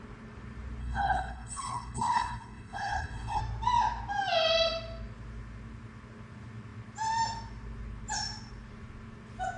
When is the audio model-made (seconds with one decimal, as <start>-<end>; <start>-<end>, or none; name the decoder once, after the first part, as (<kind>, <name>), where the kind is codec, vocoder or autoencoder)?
0.8-3.4 (codec, HILCodec)